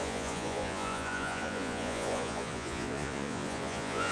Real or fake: fake